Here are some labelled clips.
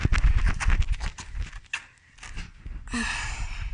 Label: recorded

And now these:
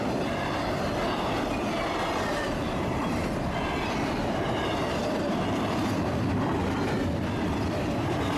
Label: recorded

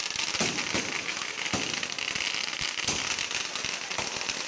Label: recorded